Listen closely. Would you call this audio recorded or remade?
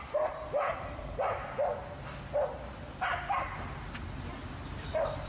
recorded